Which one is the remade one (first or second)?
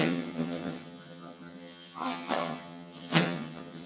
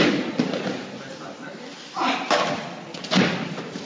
first